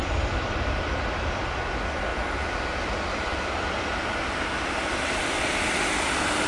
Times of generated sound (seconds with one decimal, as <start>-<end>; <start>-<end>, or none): none